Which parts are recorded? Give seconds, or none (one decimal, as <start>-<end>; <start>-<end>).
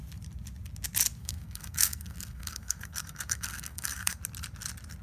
0.0-1.2; 4.2-5.0